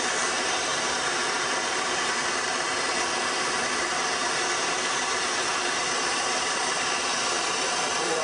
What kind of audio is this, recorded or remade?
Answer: remade